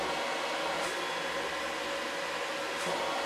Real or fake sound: real